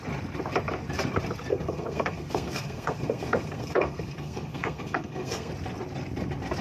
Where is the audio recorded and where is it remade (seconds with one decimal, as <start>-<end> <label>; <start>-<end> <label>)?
0.0-1.5 recorded; 1.5-5.5 remade; 5.5-6.6 recorded